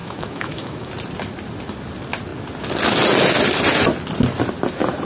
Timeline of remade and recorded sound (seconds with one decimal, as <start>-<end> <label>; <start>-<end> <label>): 0.0-0.9 remade; 0.9-5.0 recorded